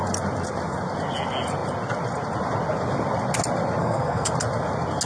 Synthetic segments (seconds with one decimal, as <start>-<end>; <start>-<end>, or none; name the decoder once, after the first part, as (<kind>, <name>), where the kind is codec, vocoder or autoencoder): 3.8-4.3 (codec, SNAC)